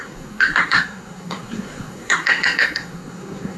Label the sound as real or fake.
fake